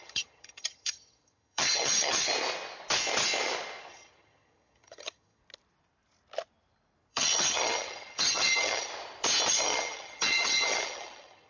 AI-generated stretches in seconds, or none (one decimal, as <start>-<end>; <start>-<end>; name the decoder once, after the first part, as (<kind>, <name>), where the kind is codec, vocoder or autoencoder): 0.0-2.3 (vocoder, HiFi-GAN); 3.9-5.4; 7.1-8.9; 9.5-11.5